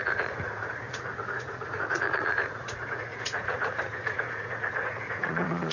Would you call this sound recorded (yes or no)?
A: no